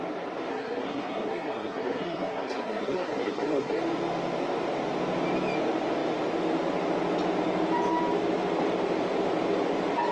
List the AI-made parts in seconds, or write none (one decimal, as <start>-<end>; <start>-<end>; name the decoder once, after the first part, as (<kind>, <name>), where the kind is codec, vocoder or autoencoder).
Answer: 0.5-3.8 (codec, SNAC)